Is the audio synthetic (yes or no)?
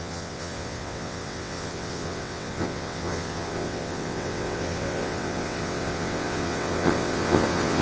yes